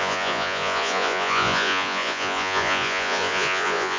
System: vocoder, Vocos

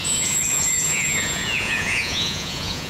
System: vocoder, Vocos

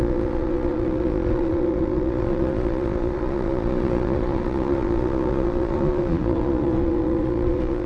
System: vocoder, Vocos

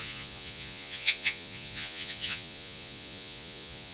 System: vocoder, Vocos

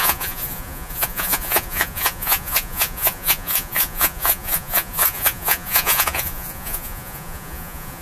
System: vocoder, Vocos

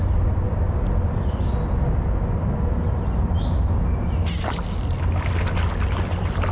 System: none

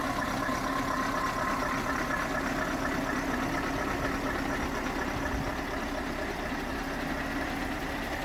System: none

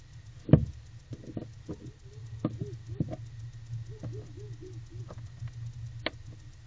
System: none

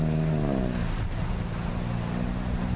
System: none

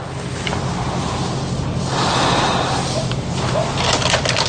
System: none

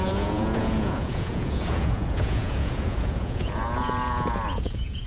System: vocoder, Vocos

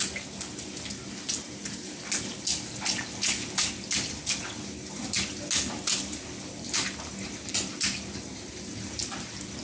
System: none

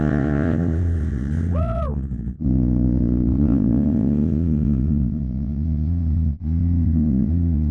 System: vocoder, Vocos